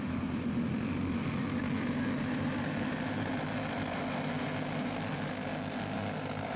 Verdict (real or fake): real